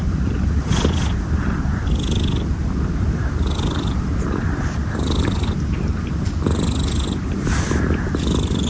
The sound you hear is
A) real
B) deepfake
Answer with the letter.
A